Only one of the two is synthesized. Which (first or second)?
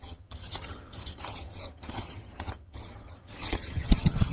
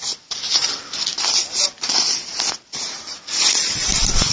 first